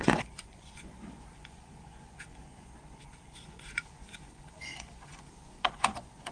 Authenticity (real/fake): fake